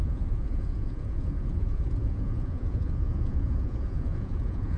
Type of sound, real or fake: fake